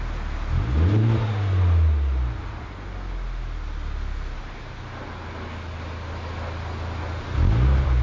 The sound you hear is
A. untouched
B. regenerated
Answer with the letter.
A